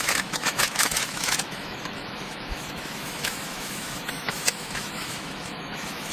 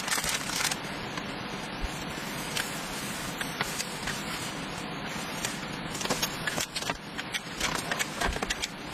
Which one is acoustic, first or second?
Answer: second